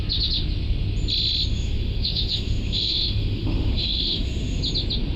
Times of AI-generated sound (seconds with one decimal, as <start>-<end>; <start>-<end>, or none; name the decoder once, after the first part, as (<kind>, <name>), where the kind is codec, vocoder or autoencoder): 1.5-4.6 (autoencoder, DAC-VAE)